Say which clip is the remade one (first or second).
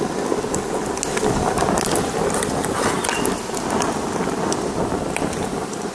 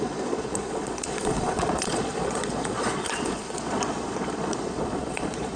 second